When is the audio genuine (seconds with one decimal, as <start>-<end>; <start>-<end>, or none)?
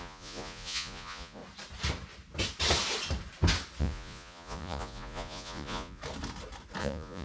1.4-3.8; 6.0-6.8